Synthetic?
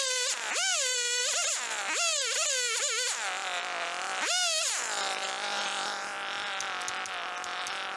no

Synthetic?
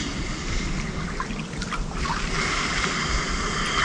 no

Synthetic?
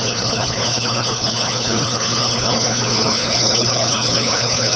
yes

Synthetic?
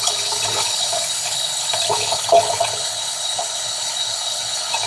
yes